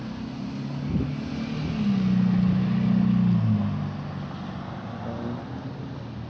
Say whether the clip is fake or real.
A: real